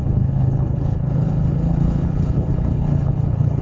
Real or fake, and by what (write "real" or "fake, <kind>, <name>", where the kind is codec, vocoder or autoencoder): fake, codec, HILCodec